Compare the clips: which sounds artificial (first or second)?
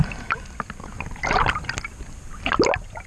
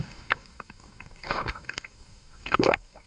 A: second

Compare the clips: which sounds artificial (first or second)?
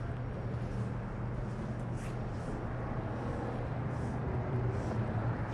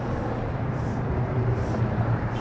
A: second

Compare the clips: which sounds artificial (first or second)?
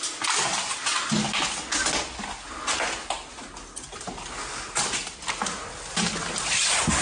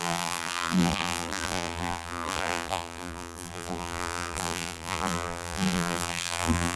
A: second